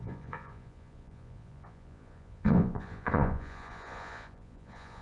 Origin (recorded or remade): remade